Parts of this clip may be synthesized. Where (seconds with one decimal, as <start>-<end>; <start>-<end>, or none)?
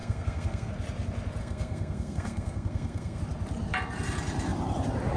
0.0-0.7; 1.4-3.2